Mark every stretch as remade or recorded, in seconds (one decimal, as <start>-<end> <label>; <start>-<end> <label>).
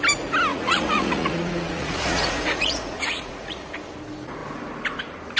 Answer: 0.0-0.5 recorded; 0.5-3.7 remade; 3.7-5.4 recorded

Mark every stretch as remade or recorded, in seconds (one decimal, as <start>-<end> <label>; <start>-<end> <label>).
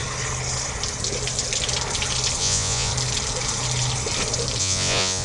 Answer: 0.0-2.4 recorded; 2.4-2.9 remade; 2.9-4.6 recorded; 4.6-5.2 remade